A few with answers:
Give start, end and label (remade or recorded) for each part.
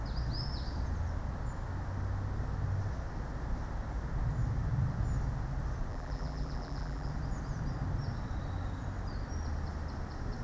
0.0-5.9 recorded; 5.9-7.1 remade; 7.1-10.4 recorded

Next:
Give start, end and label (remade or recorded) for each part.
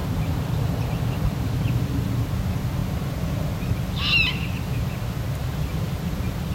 0.0-1.9 remade; 1.9-5.4 recorded; 5.4-6.0 remade; 6.0-6.5 recorded